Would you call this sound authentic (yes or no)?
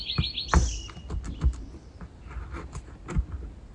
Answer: yes